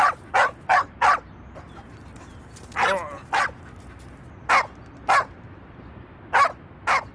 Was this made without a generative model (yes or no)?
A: yes